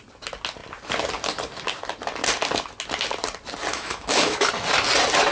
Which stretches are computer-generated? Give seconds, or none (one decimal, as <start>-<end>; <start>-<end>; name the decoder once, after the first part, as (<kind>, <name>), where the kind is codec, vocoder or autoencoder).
3.7-4.5 (autoencoder, DAC-VAE)